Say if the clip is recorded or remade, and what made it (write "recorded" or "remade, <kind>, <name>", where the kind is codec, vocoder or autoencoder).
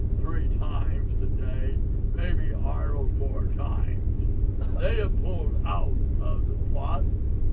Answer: recorded